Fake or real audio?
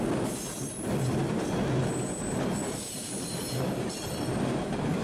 real